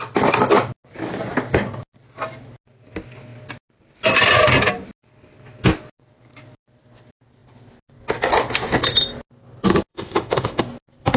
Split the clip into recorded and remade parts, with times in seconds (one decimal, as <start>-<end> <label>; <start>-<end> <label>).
0.0-9.9 recorded; 9.9-10.6 remade; 10.6-11.2 recorded